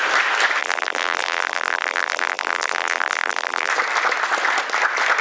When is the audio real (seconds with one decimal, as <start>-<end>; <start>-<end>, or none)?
0.0-0.6; 3.7-5.2